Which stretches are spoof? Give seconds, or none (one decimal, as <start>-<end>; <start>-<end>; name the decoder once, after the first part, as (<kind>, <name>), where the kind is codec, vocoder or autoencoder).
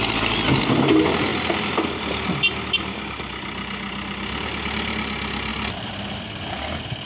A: none